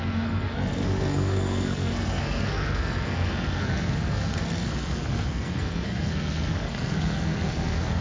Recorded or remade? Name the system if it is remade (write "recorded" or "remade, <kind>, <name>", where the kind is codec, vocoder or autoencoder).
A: remade, codec, SNAC